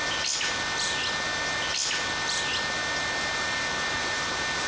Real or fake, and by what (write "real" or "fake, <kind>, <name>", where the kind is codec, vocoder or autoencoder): real